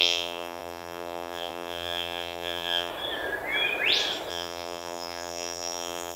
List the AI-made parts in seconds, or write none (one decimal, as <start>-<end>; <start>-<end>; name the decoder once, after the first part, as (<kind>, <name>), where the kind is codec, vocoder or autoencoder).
0.0-2.9 (vocoder, BigVGAN v2); 4.3-6.2